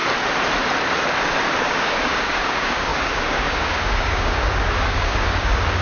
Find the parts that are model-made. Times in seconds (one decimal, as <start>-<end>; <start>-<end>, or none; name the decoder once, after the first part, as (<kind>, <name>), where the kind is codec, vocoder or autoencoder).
1.6-5.8 (codec, DAC)